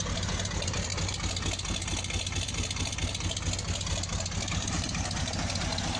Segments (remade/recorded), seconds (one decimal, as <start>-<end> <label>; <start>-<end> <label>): 0.0-0.9 remade; 0.9-4.5 recorded; 4.5-6.0 remade